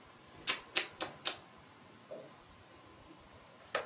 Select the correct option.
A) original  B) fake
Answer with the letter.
A